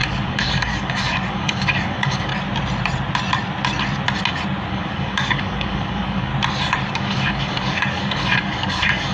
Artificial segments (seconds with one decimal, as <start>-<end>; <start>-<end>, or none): 0.0-2.3; 4.7-6.3; 6.9-9.1